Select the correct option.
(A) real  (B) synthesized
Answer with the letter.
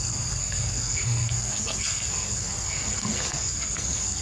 B